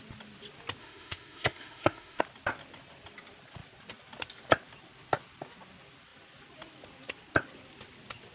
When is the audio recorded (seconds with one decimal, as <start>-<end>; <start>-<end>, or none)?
0.0-0.8; 2.2-8.3